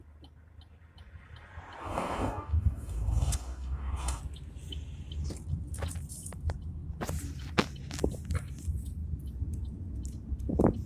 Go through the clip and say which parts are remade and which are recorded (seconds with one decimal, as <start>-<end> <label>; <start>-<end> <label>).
0.0-1.8 recorded; 1.8-4.2 remade; 4.2-10.9 recorded